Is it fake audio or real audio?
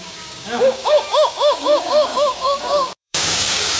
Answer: fake